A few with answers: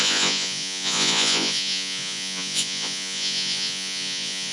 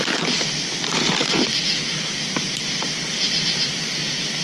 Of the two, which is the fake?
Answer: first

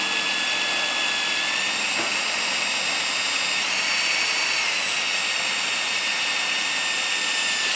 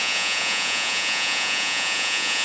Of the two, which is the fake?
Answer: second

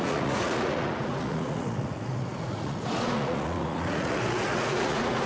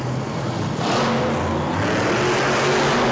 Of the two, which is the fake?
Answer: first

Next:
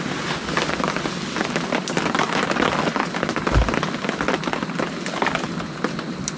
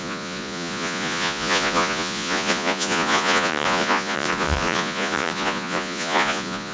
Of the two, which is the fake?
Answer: second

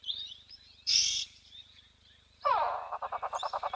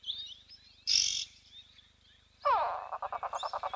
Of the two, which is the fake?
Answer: first